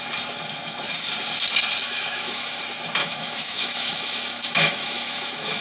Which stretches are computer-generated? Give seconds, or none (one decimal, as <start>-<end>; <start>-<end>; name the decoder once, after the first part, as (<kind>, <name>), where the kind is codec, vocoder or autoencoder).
1.8-2.6 (autoencoder, DAC-VAE); 3.0-5.6